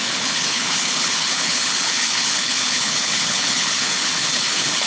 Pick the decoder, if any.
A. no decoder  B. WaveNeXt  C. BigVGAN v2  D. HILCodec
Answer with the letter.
D